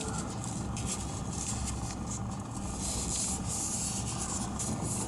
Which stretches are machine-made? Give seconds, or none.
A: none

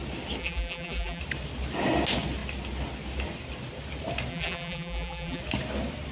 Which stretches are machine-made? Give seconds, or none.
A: 0.4-1.2 (vocoder, BigVGAN v2); 4.3-5.4

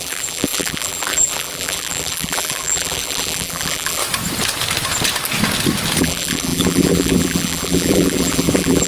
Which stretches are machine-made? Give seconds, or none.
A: 0.0-4.0 (vocoder, BigVGAN v2); 6.0-8.9

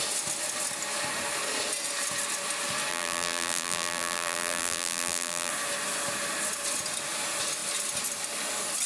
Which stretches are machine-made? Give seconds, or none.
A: 2.9-5.5 (vocoder, BigVGAN v2)

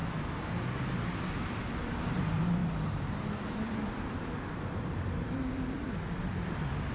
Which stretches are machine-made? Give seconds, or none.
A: 1.6-6.9 (vocoder, BigVGAN v2)